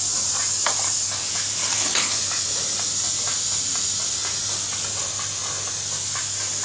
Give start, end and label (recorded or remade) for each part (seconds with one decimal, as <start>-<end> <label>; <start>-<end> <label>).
0.0-1.6 recorded; 1.6-2.2 remade; 2.2-6.6 recorded